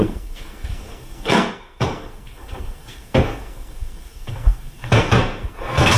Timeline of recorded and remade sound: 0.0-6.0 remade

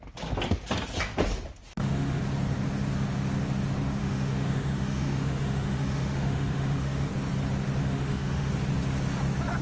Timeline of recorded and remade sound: 0.0-1.7 recorded; 1.7-2.2 remade; 2.2-4.0 recorded; 4.0-7.1 remade; 7.1-7.8 recorded; 7.8-8.5 remade; 8.5-9.6 recorded

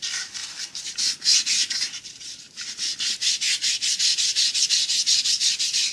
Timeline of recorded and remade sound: 0.0-5.9 recorded

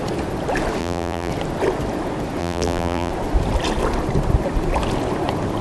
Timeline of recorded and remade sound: 0.0-0.8 recorded; 0.8-1.3 remade; 1.3-2.4 recorded; 2.4-3.1 remade; 3.1-5.6 recorded

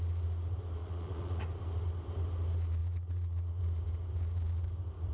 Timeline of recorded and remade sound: 0.0-0.8 recorded; 0.8-1.4 remade; 1.4-2.8 recorded; 2.8-3.6 remade; 3.6-5.1 recorded

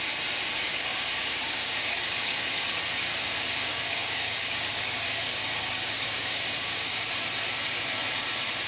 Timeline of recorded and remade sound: 0.0-0.7 recorded; 0.7-2.7 remade; 2.7-3.7 recorded; 3.7-7.1 remade; 7.1-8.7 recorded

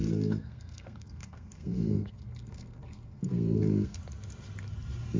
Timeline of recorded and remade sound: 0.0-4.0 remade; 4.0-5.2 recorded

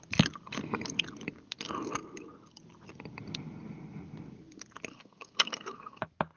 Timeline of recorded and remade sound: 0.0-4.9 recorded; 4.9-6.0 remade; 6.0-6.4 recorded